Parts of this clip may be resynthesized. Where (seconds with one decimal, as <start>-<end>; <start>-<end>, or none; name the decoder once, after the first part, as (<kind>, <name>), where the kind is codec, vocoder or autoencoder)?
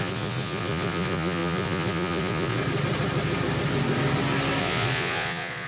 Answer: 0.0-2.6 (vocoder, Vocos); 4.6-5.7